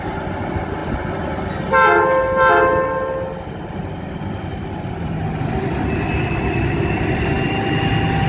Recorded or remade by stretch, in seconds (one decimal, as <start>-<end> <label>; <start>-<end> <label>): 0.0-8.3 recorded